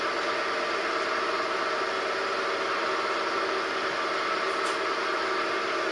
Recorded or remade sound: recorded